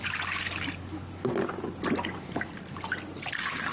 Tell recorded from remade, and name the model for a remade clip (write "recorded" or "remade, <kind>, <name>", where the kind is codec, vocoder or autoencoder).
recorded